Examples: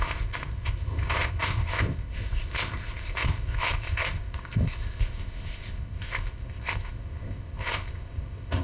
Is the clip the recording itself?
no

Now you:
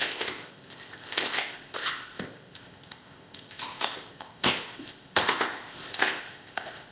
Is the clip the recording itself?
no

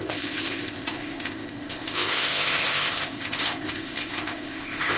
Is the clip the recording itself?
no